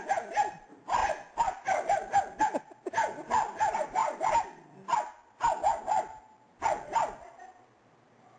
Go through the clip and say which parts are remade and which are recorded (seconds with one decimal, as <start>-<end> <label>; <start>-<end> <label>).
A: 0.0-8.4 recorded